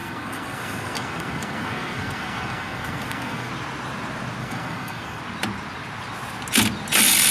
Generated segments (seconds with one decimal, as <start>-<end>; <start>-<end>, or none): 0.0-3.5; 4.4-5.2